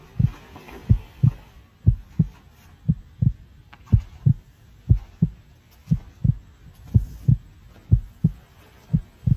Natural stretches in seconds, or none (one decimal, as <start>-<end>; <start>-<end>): 0.0-3.6; 5.6-9.4

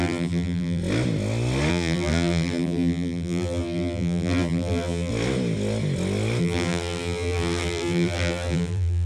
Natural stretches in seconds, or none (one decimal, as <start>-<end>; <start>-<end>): 0.8-1.7; 5.1-6.4

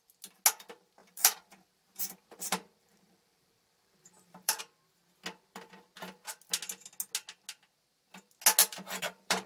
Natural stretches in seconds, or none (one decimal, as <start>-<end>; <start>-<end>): 0.0-1.0; 4.6-8.6

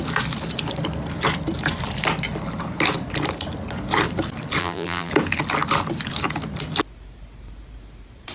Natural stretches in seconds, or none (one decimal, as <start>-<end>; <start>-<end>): 0.0-4.6; 5.1-8.3

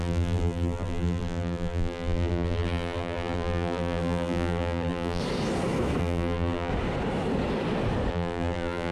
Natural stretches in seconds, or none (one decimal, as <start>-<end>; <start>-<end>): 5.2-6.0; 6.7-8.1